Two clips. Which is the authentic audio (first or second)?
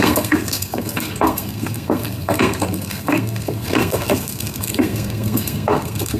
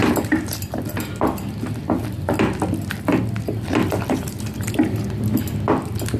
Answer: second